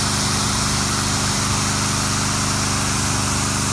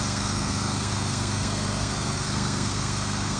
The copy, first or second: second